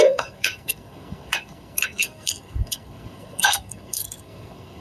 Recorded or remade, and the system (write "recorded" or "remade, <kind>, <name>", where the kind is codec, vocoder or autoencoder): remade, codec, SNAC